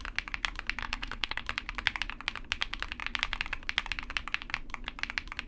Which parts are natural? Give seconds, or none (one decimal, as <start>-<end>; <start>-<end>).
0.0-0.8; 1.4-5.5